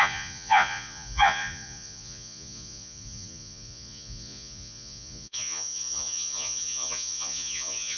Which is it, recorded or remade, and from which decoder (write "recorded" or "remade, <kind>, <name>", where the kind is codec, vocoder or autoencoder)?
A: remade, vocoder, Vocos